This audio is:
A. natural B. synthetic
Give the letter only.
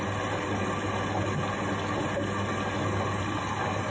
A